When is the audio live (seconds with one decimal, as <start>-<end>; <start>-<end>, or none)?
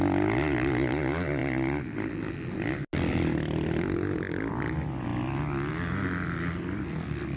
0.0-7.4